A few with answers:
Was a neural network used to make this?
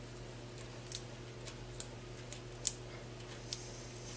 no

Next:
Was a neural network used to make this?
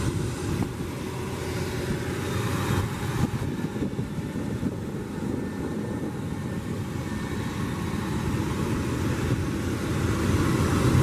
no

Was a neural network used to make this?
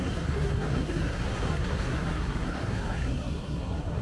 yes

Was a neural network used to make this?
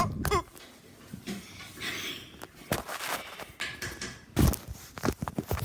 no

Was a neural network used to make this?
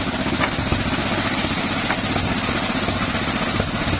no